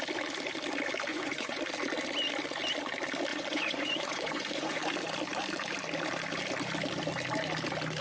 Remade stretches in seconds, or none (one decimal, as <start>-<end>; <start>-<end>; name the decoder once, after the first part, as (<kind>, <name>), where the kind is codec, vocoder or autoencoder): 1.1-1.6 (vocoder, Vocos); 3.3-4.8